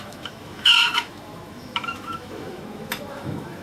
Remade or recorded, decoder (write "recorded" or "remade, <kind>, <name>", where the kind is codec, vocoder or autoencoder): remade, autoencoder, DAC-VAE